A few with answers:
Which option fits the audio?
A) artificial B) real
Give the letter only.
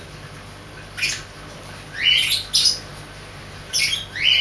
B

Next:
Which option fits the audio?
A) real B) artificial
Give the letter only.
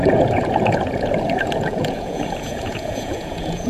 B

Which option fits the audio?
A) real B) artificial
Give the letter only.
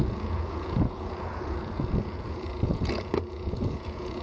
B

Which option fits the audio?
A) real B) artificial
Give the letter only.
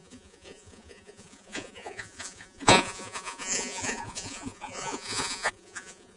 B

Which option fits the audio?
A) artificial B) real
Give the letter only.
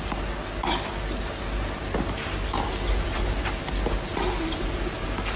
B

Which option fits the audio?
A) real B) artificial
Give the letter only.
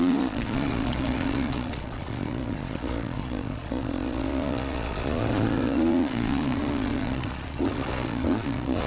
B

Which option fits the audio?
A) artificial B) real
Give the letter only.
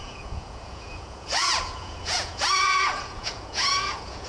A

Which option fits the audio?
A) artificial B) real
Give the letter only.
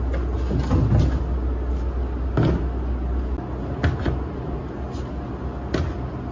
B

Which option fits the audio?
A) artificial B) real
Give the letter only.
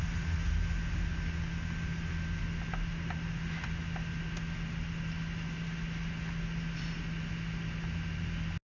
B